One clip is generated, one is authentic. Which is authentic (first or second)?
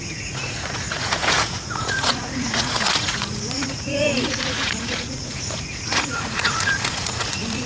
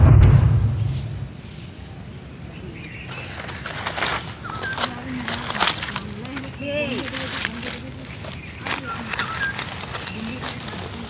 second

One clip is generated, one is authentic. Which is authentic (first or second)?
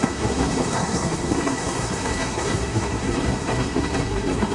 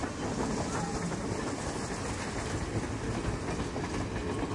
second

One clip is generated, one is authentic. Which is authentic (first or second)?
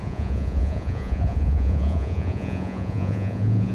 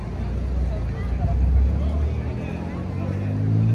second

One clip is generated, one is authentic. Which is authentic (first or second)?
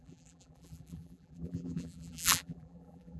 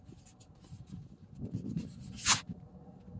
second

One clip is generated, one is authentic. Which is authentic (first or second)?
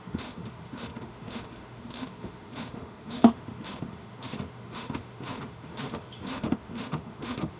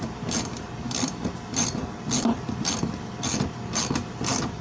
second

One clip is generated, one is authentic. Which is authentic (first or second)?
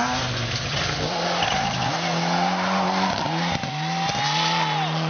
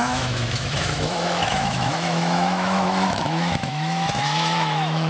first